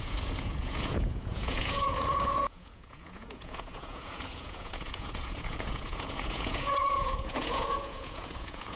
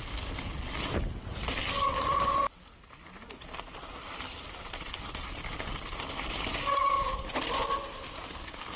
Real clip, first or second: second